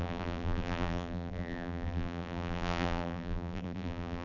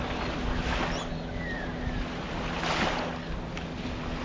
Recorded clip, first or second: second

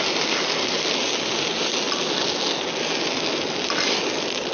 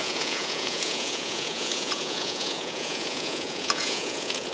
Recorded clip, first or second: first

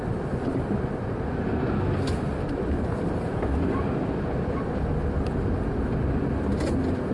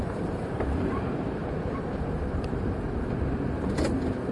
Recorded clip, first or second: first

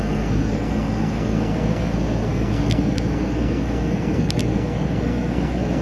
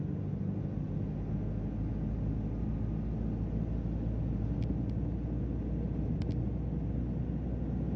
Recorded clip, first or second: second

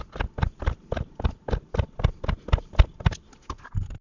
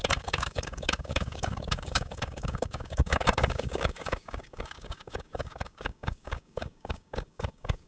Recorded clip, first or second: first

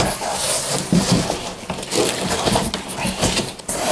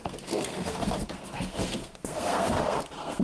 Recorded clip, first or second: first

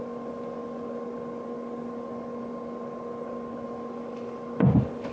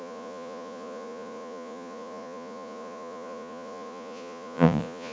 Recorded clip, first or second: first